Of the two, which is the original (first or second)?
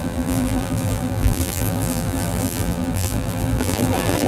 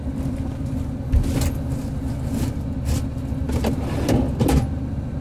second